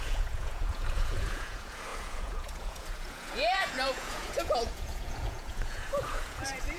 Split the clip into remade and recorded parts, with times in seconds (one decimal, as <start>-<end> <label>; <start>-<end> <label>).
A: 0.0-6.8 remade